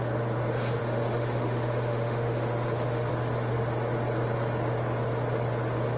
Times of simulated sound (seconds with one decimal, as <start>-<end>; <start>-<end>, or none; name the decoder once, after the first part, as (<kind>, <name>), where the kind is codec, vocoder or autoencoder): 0.8-3.1 (autoencoder, DAC-VAE)